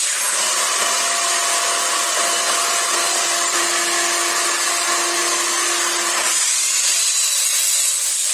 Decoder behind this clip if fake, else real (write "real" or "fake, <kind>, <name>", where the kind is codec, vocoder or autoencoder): real